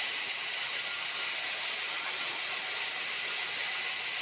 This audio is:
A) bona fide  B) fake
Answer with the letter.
A